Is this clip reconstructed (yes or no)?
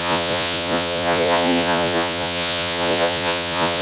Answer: yes